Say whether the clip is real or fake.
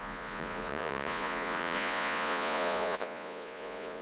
fake